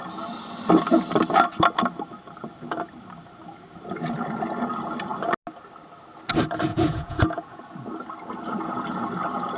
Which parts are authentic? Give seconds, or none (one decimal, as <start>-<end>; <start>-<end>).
0.0-6.7; 7.6-9.6